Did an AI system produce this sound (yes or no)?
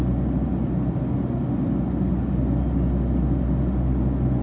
no